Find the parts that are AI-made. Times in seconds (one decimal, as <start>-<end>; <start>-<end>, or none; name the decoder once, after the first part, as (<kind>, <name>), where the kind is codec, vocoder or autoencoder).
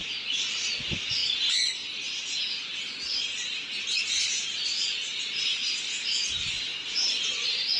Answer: 0.0-1.2 (vocoder, BigVGAN v2); 4.0-7.8